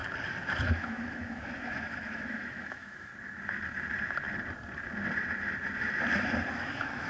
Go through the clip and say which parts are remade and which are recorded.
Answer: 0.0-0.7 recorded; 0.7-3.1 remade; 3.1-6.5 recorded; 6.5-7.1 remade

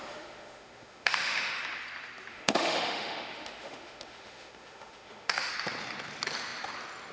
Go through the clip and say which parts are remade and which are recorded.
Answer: 0.0-1.6 remade; 1.6-2.3 recorded; 2.3-5.5 remade; 5.5-7.1 recorded

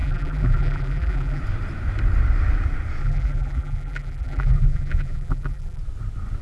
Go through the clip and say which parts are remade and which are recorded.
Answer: 0.0-1.4 remade; 1.4-3.0 recorded; 3.0-5.8 remade; 5.8-6.4 recorded